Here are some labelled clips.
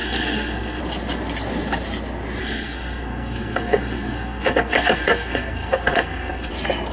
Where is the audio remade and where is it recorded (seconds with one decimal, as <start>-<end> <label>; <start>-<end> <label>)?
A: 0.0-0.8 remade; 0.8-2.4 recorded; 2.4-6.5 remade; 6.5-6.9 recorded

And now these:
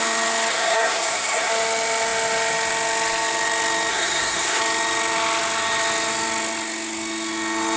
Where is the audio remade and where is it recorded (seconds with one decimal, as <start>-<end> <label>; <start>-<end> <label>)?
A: 0.0-0.5 recorded; 0.5-1.5 remade; 1.5-3.9 recorded; 3.9-4.6 remade; 4.6-7.8 recorded

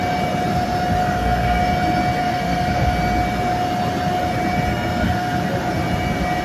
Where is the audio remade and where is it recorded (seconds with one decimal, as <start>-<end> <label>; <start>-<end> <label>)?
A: 0.0-1.0 recorded; 1.0-1.6 remade; 1.6-2.2 recorded; 2.2-2.9 remade; 2.9-4.7 recorded; 4.7-5.4 remade; 5.4-6.4 recorded